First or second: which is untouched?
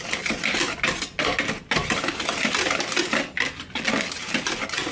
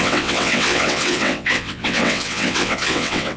first